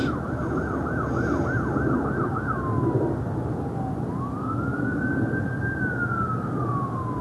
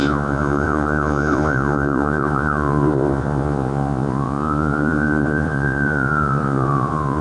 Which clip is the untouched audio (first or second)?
first